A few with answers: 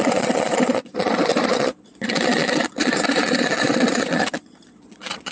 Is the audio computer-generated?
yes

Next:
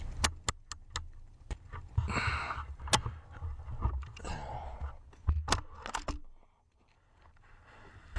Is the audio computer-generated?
no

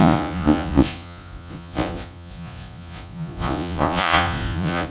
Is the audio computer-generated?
yes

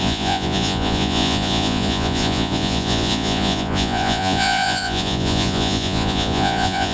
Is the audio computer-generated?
yes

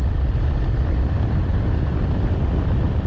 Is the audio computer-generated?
no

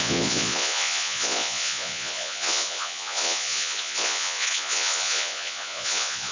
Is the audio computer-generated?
yes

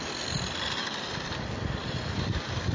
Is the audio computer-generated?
no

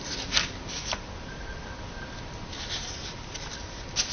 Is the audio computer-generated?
no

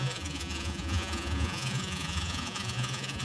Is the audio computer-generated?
yes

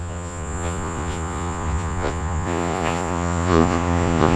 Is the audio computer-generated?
yes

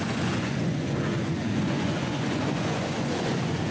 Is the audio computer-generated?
yes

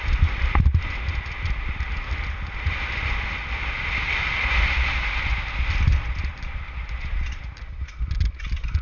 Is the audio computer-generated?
no